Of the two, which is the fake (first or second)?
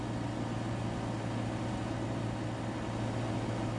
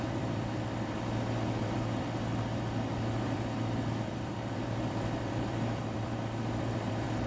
second